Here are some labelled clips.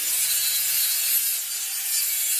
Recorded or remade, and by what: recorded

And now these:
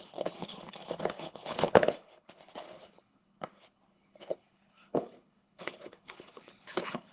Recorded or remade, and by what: remade, codec, HILCodec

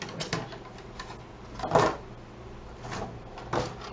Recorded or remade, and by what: recorded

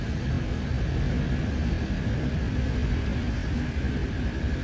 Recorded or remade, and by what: recorded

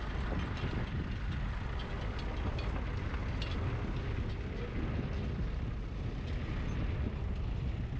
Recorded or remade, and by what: recorded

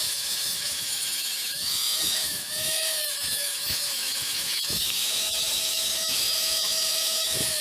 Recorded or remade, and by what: remade, autoencoder, DAC-VAE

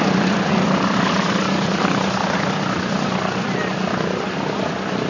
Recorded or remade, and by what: recorded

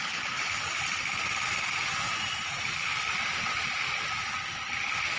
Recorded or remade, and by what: recorded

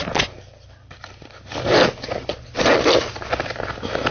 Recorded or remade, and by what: recorded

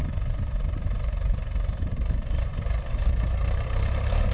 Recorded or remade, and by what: remade, vocoder, BigVGAN v2